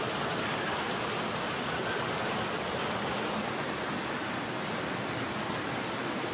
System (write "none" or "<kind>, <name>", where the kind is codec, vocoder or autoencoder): none